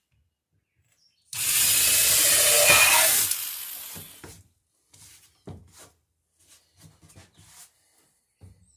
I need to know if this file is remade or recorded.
recorded